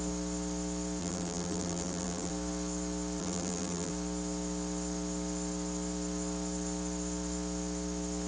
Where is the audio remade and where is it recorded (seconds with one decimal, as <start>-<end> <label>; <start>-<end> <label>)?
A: 0.0-1.0 recorded; 1.0-2.3 remade; 2.3-3.2 recorded; 3.2-3.9 remade; 3.9-8.3 recorded